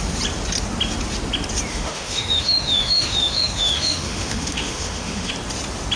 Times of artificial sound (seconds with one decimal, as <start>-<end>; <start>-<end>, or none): 1.7-5.3